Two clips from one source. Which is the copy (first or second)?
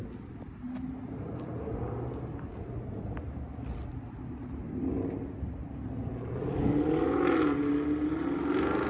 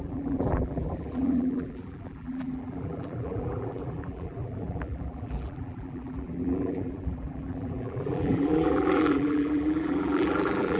second